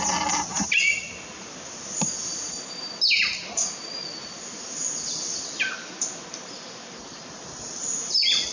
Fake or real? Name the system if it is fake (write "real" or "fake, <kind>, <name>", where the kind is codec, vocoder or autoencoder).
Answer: real